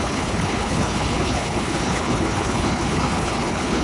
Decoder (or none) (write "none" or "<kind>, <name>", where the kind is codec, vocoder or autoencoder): codec, HILCodec